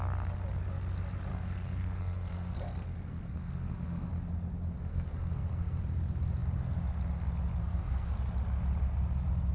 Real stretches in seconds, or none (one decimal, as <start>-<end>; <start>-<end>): 0.0-1.3; 4.1-4.9; 5.8-7.6; 8.1-9.5